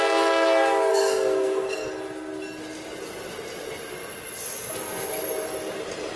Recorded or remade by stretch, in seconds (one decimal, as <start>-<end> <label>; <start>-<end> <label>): 0.0-0.9 recorded; 0.9-1.9 remade; 1.9-6.2 recorded